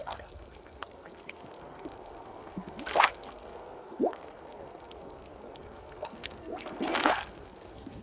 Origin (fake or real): fake